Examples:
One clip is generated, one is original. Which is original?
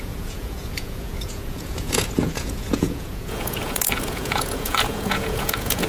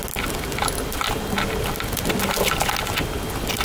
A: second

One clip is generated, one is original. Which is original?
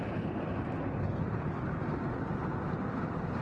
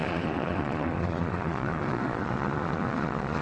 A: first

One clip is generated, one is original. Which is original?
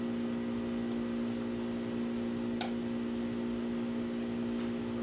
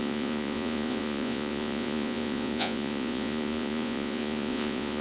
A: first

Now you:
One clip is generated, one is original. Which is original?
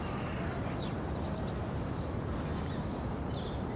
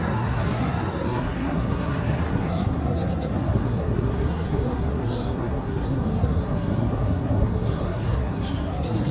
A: first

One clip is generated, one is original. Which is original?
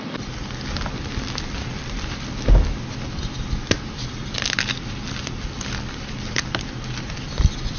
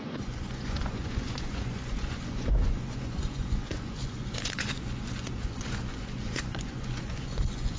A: first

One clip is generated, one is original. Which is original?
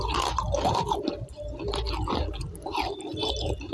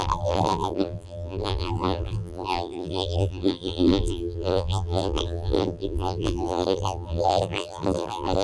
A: first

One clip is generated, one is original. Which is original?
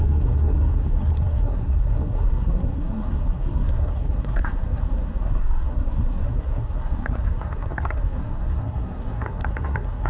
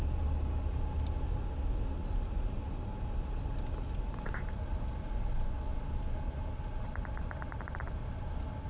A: second